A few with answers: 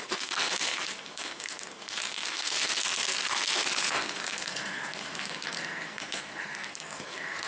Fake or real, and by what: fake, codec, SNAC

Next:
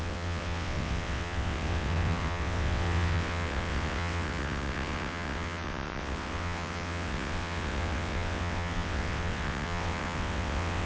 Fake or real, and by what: fake, vocoder, WaveNeXt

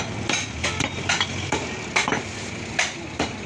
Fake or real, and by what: real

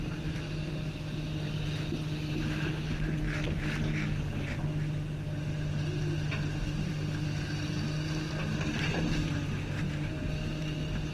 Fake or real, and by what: real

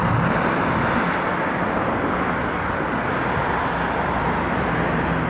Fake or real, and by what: real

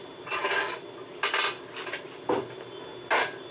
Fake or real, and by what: real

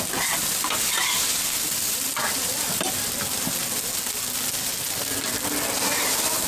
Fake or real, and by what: real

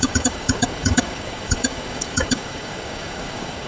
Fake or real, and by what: fake, codec, DAC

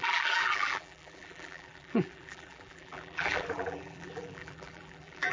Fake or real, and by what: fake, vocoder, BigVGAN v2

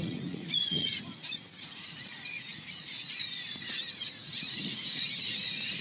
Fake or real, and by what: fake, vocoder, Vocos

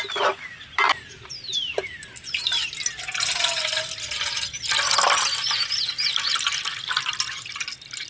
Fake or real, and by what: real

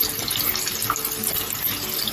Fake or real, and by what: real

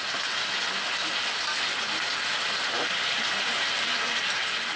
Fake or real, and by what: real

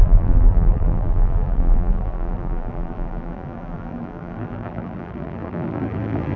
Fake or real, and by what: fake, vocoder, BigVGAN v2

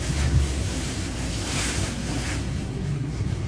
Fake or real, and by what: fake, codec, SNAC